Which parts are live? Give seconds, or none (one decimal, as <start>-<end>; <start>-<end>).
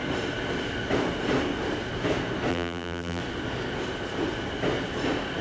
0.0-2.5; 3.2-5.4